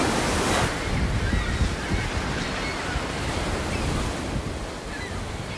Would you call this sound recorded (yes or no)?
yes